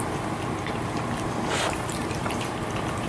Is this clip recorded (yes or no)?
no